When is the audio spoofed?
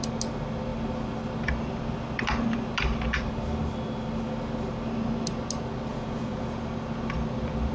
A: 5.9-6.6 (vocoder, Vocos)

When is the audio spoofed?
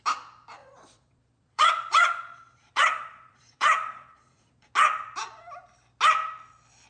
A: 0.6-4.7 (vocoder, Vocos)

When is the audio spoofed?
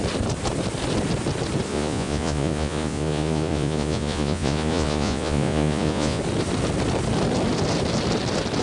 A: 1.7-6.2 (vocoder, Vocos)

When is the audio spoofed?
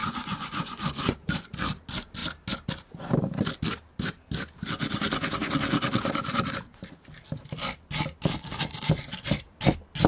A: 0.0-1.5 (vocoder, Vocos)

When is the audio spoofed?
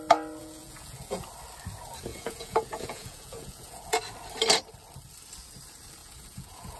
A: 0.4-1.2 (vocoder, Vocos); 2.1-4.0; 6.0-6.8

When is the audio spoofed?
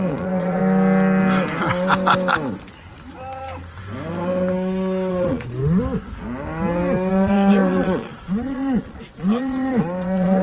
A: 0.0-0.6 (vocoder, Vocos); 5.1-5.6; 7.1-10.4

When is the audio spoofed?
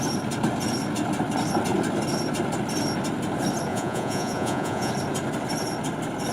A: 3.7-4.9 (vocoder, Vocos)